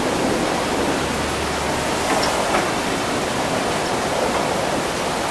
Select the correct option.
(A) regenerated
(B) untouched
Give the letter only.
B